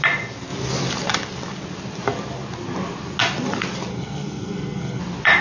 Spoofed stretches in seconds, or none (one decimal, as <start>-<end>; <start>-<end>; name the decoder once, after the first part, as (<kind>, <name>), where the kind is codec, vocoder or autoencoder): 3.9-5.0 (codec, SNAC)